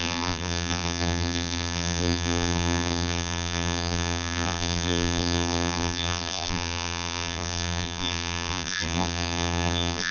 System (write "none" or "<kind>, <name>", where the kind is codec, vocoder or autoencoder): vocoder, BigVGAN v2